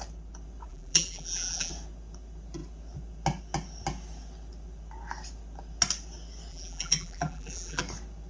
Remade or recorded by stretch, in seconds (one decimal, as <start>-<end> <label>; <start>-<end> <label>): 0.0-0.7 recorded; 0.7-1.7 remade; 1.7-6.5 recorded; 6.5-7.8 remade; 7.8-8.3 recorded